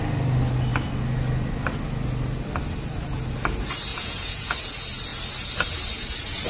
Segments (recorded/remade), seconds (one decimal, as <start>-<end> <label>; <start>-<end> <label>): 0.0-3.9 recorded; 3.9-4.5 remade; 4.5-6.5 recorded